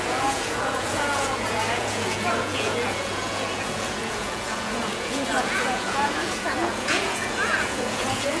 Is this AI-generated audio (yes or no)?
yes